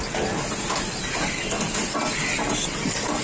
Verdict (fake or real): real